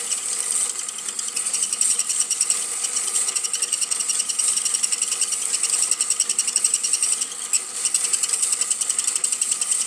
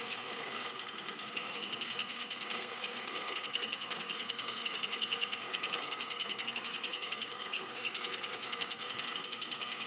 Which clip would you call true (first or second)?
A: first